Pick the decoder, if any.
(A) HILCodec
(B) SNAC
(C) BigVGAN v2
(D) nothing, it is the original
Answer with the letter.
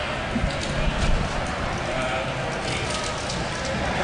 D